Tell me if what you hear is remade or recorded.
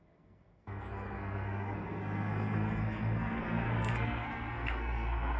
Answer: remade